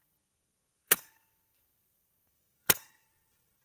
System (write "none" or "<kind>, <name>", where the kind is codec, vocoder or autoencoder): codec, SNAC